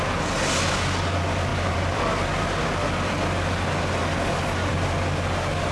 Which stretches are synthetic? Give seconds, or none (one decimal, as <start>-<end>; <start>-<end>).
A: 1.5-2.0